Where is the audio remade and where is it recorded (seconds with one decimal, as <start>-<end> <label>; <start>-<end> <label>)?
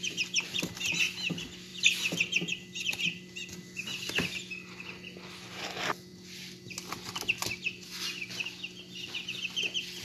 0.0-10.0 recorded